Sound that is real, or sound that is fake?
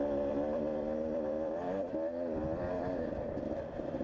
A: fake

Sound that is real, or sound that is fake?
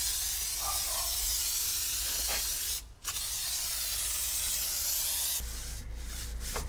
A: real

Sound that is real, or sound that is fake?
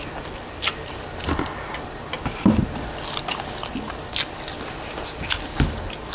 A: real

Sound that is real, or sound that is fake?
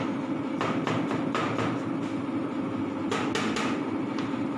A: real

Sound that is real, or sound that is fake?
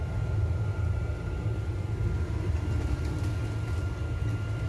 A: real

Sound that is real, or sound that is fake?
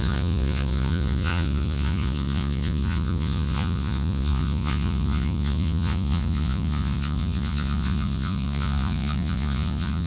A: fake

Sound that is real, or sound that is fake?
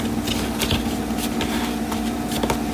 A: real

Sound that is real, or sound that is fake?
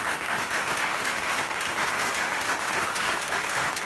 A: fake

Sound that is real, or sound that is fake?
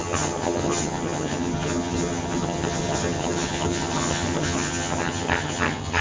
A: fake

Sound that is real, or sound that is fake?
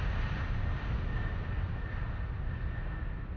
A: real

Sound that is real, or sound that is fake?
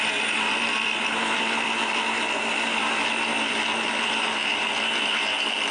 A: fake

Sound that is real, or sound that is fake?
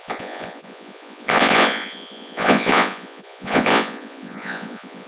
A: fake